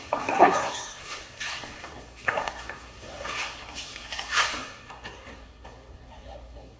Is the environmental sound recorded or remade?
remade